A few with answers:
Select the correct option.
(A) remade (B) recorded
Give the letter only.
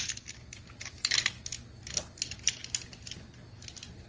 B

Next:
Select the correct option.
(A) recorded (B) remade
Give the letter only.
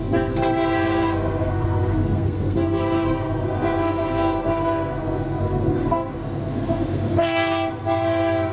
B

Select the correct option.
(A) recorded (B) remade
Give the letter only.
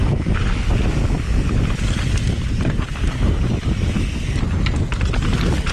A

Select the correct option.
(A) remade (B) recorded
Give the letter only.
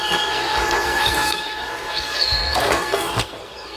A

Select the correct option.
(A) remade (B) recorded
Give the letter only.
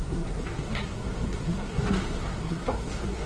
A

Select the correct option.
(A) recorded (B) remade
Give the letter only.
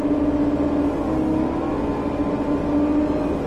A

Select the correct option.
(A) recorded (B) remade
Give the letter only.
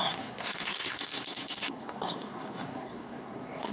B